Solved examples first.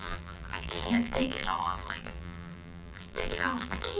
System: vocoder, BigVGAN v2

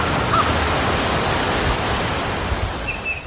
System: none